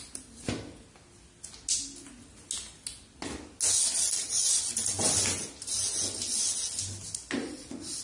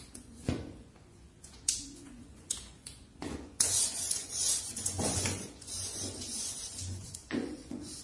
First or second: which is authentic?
first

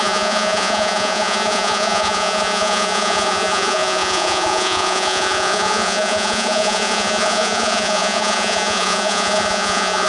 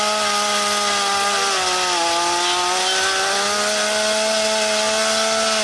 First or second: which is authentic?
second